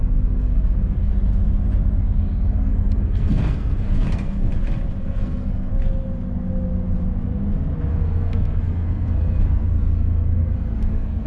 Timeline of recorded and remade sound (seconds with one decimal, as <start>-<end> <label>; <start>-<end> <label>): 0.0-1.1 remade; 1.1-2.0 recorded; 2.0-4.5 remade; 4.5-5.0 recorded; 5.0-5.7 remade; 5.7-7.9 recorded; 7.9-11.3 remade